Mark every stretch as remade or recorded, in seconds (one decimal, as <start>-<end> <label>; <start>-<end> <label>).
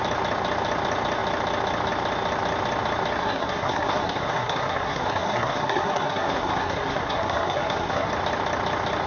0.0-3.2 recorded; 3.2-8.1 remade; 8.1-9.1 recorded